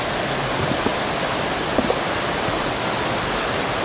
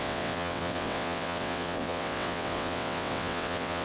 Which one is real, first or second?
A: first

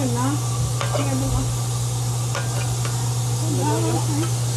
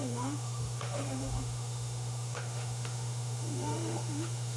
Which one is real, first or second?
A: first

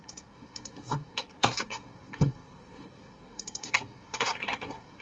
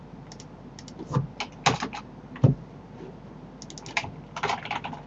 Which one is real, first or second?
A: second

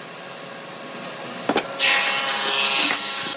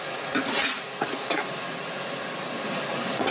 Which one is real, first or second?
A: first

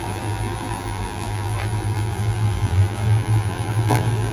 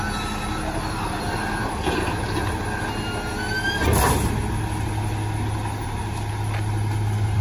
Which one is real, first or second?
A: second